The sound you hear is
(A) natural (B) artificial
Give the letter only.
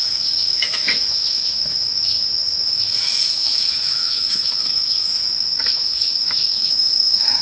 B